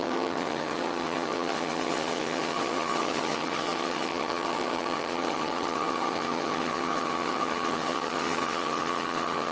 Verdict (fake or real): fake